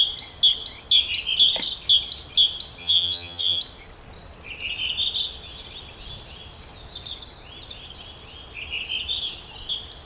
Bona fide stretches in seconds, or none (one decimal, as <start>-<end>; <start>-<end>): 0.0-2.8; 3.6-10.1